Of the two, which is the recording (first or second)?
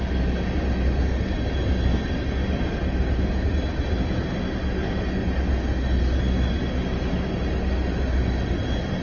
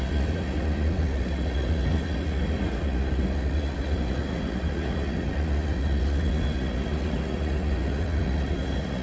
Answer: first